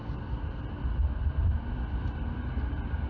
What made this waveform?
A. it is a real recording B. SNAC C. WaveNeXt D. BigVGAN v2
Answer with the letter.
A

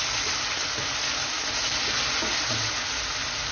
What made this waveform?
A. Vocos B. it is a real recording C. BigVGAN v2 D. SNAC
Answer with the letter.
B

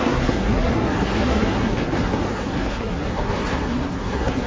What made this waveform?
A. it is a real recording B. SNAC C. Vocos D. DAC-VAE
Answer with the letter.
B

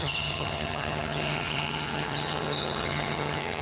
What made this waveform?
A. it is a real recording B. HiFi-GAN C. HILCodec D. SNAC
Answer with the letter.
B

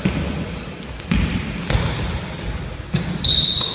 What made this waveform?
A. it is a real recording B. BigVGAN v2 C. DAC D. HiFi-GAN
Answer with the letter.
A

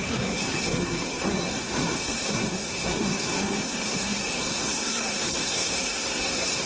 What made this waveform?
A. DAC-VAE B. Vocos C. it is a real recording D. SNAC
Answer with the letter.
D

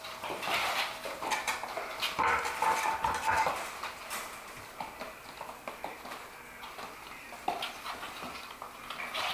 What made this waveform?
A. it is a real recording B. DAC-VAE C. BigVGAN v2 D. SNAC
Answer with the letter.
A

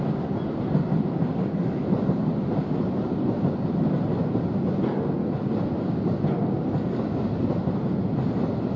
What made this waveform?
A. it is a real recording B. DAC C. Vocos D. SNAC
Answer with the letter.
A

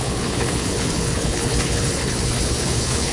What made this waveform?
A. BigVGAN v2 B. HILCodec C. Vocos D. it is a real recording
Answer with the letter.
B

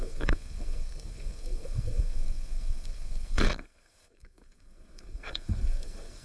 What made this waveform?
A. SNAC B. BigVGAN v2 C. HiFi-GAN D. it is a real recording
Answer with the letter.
A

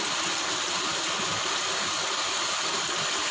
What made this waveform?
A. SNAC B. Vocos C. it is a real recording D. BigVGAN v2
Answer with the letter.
D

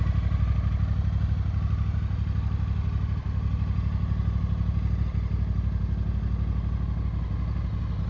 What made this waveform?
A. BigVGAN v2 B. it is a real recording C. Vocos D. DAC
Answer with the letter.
B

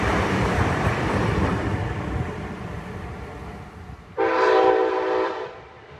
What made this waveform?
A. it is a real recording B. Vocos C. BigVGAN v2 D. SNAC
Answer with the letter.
C